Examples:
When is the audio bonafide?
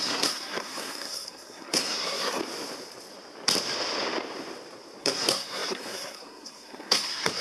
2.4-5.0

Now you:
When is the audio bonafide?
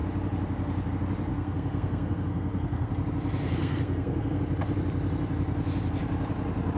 0.0-1.3; 2.9-3.6; 4.4-6.8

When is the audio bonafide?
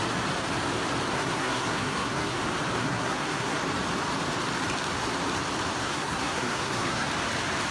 0.0-1.1; 2.4-2.8; 3.6-5.8; 7.1-7.7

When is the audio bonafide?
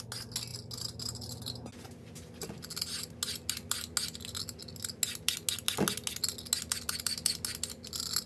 0.0-8.3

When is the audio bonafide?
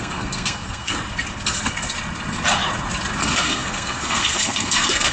0.9-3.2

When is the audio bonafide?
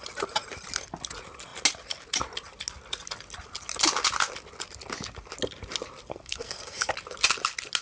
0.0-6.1; 6.9-7.8